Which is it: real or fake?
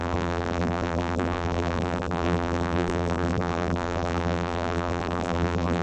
fake